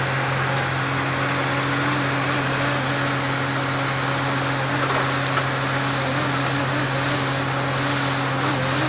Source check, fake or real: real